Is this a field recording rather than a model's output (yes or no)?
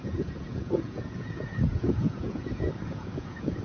no